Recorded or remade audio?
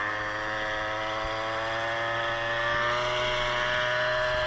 recorded